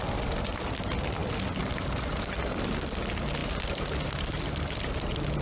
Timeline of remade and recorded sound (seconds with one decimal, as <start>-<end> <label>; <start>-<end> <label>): 0.0-5.4 recorded